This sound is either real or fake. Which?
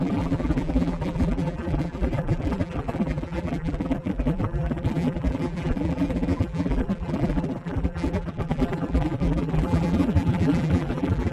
fake